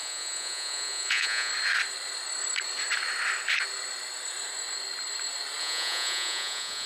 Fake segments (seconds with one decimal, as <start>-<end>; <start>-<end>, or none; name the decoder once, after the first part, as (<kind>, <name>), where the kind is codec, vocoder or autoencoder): 0.0-1.5 (vocoder, Vocos); 5.6-6.9